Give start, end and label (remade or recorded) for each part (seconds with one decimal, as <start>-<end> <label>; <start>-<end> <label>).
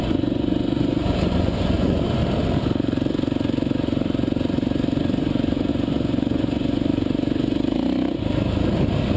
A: 0.0-2.2 remade; 2.2-5.7 recorded; 5.7-6.9 remade; 6.9-9.2 recorded